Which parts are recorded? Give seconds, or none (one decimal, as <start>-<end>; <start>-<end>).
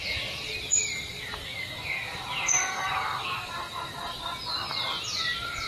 0.0-1.4; 2.1-2.7; 3.5-5.7